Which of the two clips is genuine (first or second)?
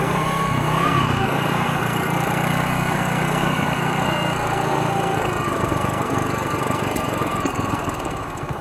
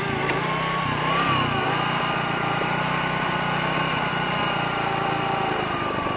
second